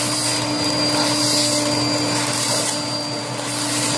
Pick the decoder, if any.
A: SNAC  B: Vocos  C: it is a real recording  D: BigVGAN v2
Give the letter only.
C